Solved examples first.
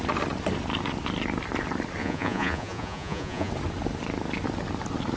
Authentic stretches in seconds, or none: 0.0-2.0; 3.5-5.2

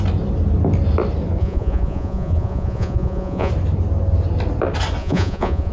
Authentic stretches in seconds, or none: 0.0-1.4; 3.5-5.0